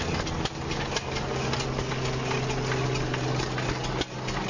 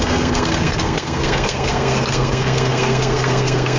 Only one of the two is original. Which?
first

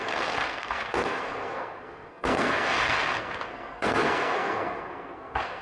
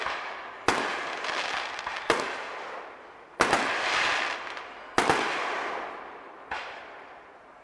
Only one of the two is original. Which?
second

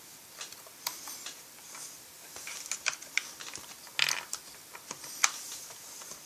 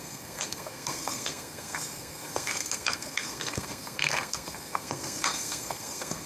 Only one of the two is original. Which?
first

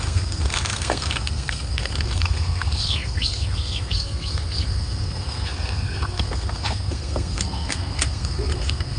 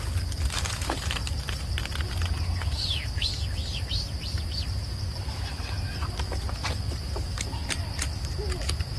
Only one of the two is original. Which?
second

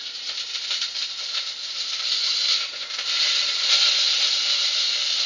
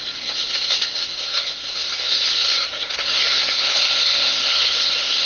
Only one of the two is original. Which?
first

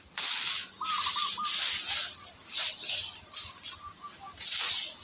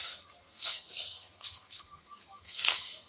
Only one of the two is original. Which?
first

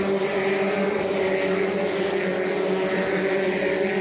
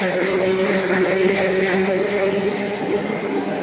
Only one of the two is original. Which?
first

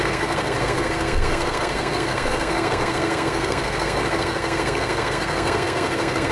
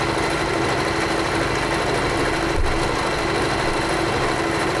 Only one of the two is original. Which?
second